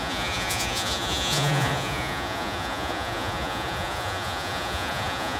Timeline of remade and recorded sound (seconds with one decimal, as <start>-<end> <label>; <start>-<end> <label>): 0.0-5.4 remade